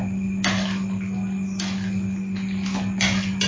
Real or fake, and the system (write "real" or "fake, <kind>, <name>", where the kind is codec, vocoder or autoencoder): real